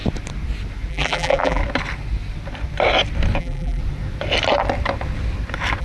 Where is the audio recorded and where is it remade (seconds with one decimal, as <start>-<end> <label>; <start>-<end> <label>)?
0.0-0.9 recorded; 0.9-1.6 remade; 1.6-3.4 recorded; 3.4-3.8 remade; 3.8-5.8 recorded

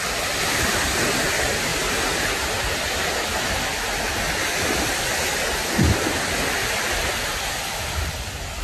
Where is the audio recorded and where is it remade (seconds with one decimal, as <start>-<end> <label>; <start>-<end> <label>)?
0.0-8.6 recorded

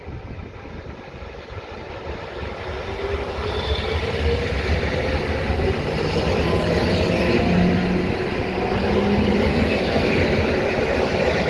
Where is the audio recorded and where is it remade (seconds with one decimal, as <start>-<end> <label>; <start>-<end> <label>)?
0.0-9.5 recorded; 9.5-10.1 remade; 10.1-11.5 recorded

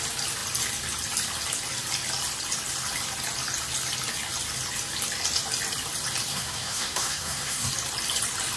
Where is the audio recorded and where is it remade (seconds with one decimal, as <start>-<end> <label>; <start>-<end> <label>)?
0.0-6.3 recorded; 6.3-7.7 remade; 7.7-8.6 recorded